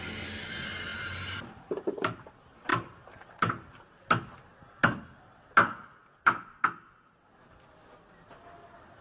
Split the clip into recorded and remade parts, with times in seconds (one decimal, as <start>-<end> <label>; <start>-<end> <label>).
0.0-0.9 recorded; 0.9-2.3 remade; 2.3-2.7 recorded; 2.7-3.9 remade; 3.9-9.0 recorded